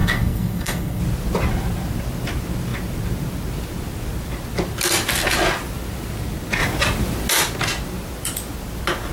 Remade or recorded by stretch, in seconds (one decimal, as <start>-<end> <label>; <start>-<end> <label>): 0.0-1.0 remade; 1.0-9.1 recorded